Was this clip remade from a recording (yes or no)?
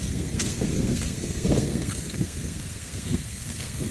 yes